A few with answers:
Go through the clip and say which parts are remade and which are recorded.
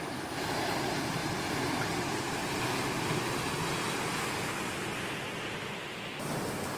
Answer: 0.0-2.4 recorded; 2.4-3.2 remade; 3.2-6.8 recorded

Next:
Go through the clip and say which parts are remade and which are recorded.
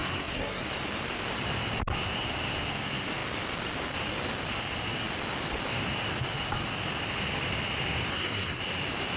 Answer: 0.0-0.7 remade; 0.7-8.1 recorded; 8.1-8.6 remade; 8.6-9.2 recorded